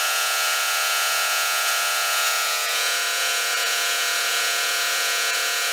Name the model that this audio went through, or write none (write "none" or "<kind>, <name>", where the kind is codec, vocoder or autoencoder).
vocoder, Vocos